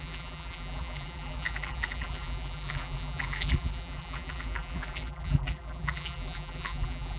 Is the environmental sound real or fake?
fake